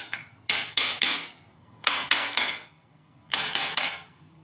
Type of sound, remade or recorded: remade